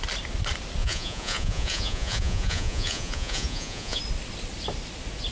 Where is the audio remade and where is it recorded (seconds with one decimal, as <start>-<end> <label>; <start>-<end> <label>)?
0.0-0.8 recorded; 0.8-4.0 remade; 4.0-5.3 recorded

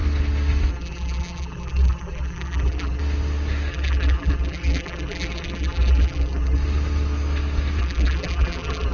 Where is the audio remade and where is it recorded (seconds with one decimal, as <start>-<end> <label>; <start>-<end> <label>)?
0.0-0.7 recorded; 0.7-3.0 remade; 3.0-3.7 recorded; 3.7-6.6 remade; 6.6-7.8 recorded; 7.8-8.9 remade